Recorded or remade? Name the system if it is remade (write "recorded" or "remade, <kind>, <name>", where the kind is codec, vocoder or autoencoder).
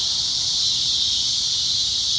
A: recorded